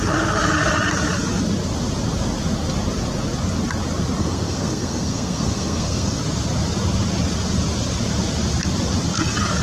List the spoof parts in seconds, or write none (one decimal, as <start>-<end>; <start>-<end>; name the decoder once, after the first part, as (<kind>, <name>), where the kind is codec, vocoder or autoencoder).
4.2-6.2 (codec, SNAC)